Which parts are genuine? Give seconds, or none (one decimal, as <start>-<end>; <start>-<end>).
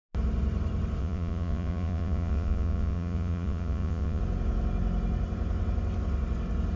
0.0-1.0; 4.2-6.8